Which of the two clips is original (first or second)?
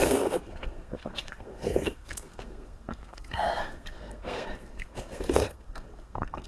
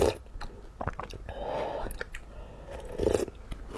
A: second